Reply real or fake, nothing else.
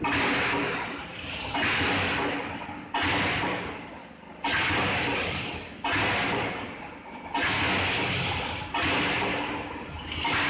real